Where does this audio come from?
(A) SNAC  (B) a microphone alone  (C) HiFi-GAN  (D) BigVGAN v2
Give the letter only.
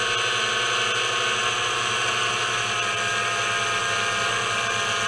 B